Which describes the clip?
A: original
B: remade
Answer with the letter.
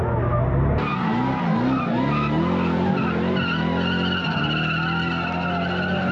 A